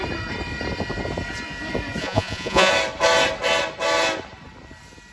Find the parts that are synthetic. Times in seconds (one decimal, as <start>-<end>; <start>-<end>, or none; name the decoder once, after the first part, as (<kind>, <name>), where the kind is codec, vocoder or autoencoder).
2.0-2.7 (vocoder, Vocos)